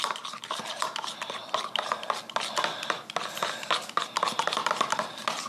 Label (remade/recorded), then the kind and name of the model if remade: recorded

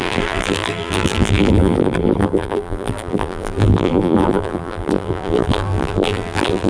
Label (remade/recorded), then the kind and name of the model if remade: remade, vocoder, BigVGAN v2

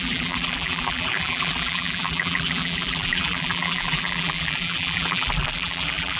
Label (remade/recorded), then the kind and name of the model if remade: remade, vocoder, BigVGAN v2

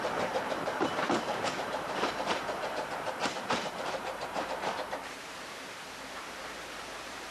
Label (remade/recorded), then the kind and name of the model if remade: remade, vocoder, BigVGAN v2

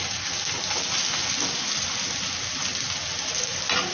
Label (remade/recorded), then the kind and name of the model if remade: recorded